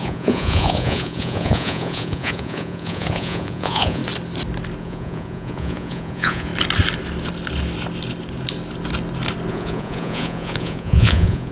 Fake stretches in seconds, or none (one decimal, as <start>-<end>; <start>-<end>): 0.0-4.0; 4.8-6.5; 9.5-11.5